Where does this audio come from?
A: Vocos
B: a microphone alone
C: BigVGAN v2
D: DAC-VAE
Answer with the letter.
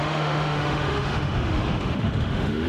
D